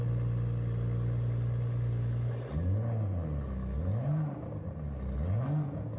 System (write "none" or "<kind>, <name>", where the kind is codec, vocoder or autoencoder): none